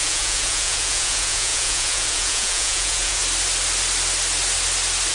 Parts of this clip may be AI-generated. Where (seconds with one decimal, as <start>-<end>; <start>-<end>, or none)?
0.0-3.2